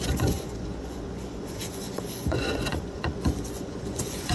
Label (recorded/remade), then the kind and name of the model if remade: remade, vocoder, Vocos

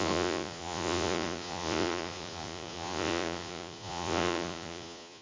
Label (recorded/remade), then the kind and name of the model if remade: remade, vocoder, Vocos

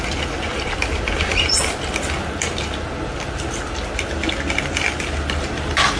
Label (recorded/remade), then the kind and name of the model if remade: recorded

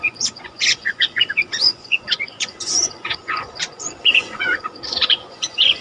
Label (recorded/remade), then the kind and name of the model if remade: remade, vocoder, Vocos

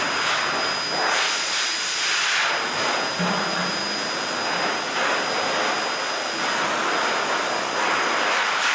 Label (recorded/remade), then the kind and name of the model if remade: recorded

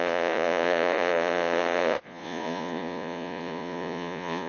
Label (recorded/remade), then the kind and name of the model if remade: remade, vocoder, Vocos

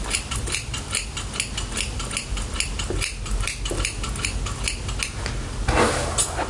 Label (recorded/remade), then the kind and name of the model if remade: recorded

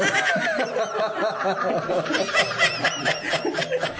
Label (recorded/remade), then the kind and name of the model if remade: recorded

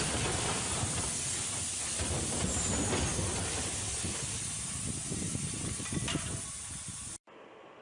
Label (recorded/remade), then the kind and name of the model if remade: recorded